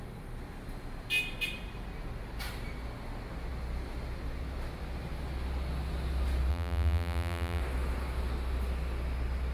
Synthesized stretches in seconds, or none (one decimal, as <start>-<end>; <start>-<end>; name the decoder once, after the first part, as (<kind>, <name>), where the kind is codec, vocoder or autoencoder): 6.5-7.6 (vocoder, BigVGAN v2)